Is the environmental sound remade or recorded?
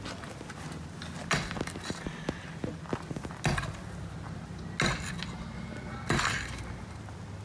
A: recorded